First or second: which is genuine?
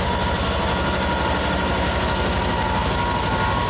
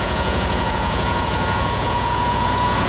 first